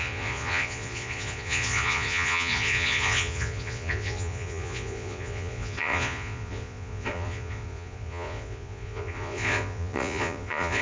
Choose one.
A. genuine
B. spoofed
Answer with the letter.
B